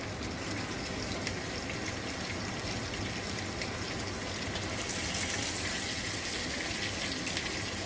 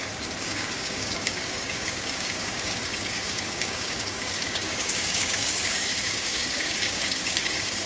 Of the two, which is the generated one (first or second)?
second